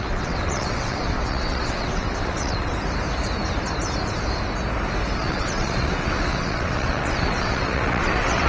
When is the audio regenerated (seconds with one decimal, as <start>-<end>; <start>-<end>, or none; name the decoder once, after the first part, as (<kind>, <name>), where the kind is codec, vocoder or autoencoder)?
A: 0.0-2.7 (vocoder, WaveNeXt); 5.2-8.5